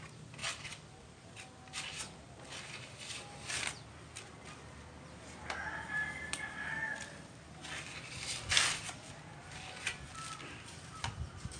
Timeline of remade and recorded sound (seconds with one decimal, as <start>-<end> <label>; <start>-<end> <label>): 0.0-11.6 recorded